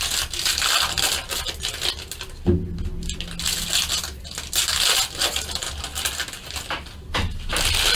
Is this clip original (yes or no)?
yes